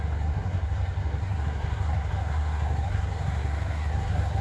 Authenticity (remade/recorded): remade